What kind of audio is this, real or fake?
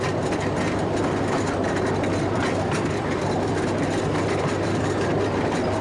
real